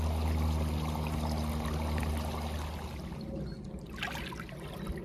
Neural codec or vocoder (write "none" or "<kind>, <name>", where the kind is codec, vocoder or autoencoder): none